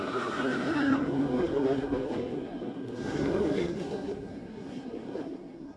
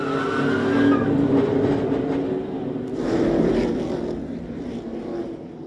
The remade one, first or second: first